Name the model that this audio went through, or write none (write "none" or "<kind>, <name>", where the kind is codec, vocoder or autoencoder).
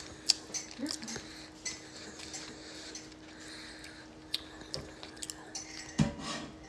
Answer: none